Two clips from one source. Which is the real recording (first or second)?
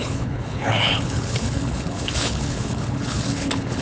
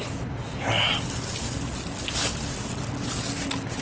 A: second